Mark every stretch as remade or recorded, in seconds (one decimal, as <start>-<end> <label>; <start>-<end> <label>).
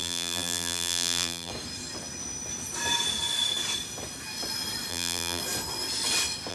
0.0-1.5 remade; 1.5-4.9 recorded; 4.9-5.4 remade; 5.4-6.5 recorded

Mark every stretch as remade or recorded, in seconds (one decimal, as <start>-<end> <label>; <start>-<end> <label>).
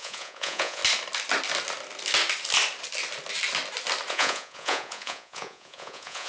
0.0-0.8 remade; 0.8-4.1 recorded; 4.1-6.3 remade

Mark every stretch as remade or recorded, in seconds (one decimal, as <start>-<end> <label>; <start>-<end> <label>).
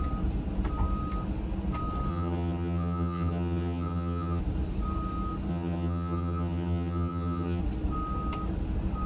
0.0-2.1 recorded; 2.1-4.4 remade; 4.4-5.5 recorded; 5.5-7.6 remade; 7.6-9.1 recorded